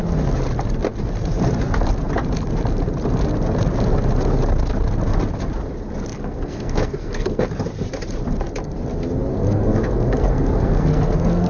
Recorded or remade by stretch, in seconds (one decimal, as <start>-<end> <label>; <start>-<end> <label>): 0.0-6.1 recorded; 6.1-7.5 remade; 7.5-9.3 recorded; 9.3-11.5 remade